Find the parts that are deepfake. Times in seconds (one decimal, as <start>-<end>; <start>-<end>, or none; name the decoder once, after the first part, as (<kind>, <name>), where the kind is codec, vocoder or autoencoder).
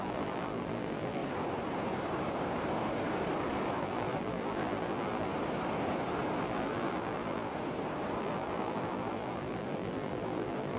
0.0-1.2 (vocoder, BigVGAN v2); 3.8-5.3; 6.4-7.5; 8.2-10.8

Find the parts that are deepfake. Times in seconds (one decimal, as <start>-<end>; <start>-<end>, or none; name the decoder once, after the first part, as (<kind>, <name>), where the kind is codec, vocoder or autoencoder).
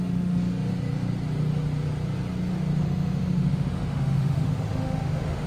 0.0-0.7 (autoencoder, DAC-VAE); 2.8-5.5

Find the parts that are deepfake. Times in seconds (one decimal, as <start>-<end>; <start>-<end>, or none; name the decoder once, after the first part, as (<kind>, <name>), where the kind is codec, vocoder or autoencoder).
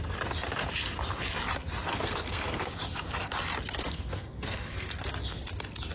1.9-2.7 (codec, SNAC); 3.8-4.9